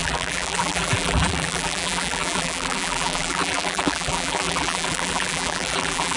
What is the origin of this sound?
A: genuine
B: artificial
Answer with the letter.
B